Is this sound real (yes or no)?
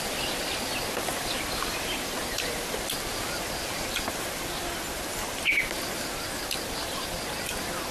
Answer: yes